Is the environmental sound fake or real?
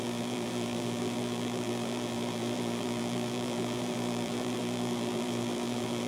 fake